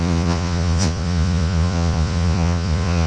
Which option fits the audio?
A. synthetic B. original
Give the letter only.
A